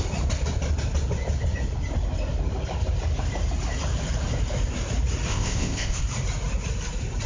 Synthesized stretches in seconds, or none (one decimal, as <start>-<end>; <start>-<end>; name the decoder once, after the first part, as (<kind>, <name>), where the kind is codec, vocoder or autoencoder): 5.3-6.0 (codec, ZipCodec)

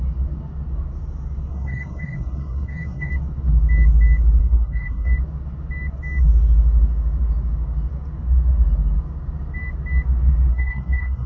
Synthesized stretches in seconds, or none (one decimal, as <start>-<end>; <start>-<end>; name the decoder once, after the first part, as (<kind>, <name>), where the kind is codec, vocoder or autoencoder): 1.5-3.1 (codec, SNAC); 4.4-5.1; 10.5-11.3

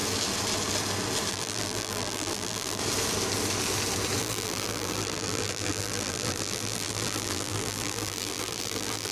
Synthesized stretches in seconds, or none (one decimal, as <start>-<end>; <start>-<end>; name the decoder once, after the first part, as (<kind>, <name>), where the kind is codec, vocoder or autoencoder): 1.3-2.8 (vocoder, BigVGAN v2); 4.2-9.1

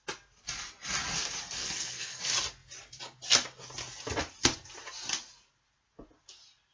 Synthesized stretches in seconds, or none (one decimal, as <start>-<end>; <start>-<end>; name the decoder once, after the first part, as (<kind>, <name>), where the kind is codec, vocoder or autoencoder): 1.6-2.2 (codec, SNAC)